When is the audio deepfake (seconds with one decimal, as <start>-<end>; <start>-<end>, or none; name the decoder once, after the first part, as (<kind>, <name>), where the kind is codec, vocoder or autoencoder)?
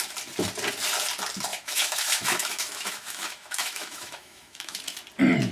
1.5-4.8 (autoencoder, DAC-VAE)